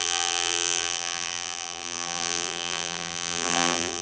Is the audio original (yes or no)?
no